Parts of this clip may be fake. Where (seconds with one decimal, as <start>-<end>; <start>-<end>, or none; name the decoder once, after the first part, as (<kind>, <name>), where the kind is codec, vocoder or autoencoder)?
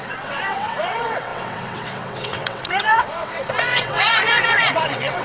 0.0-5.2 (vocoder, WaveNeXt)